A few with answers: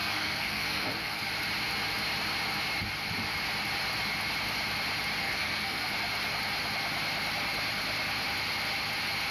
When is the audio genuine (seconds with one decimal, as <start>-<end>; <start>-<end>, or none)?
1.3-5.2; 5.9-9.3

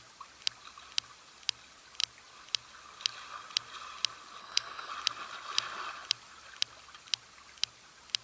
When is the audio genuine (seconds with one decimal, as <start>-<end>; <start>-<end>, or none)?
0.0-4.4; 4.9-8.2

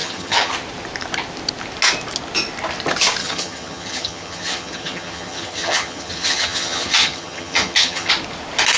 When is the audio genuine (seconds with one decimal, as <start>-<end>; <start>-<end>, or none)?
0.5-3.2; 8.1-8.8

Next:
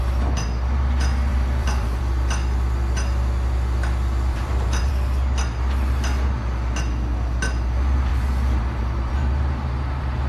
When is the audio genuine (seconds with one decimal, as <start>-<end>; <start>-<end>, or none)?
0.0-1.3; 2.0-4.3; 4.9-8.1

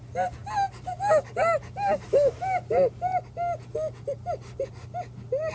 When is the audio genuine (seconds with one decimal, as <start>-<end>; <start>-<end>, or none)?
0.0-5.5

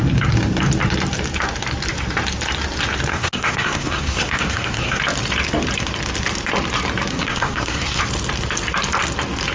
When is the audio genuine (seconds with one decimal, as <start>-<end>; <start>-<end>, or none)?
0.0-3.1; 5.0-7.1; 8.0-9.5